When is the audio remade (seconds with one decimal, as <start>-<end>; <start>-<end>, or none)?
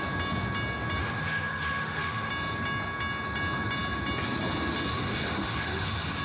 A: 1.0-2.3; 4.9-6.2